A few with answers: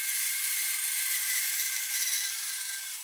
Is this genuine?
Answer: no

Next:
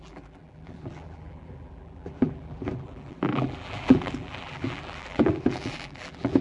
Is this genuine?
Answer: no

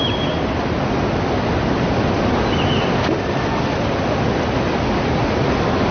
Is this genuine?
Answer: yes